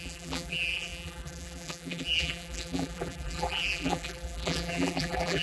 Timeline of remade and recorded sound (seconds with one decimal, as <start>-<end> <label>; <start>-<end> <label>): 0.0-5.4 remade